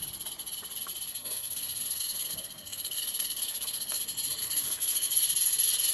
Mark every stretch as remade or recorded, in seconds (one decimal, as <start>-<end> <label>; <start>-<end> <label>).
0.0-1.2 recorded; 1.2-4.0 remade; 4.0-4.4 recorded; 4.4-5.1 remade; 5.1-5.9 recorded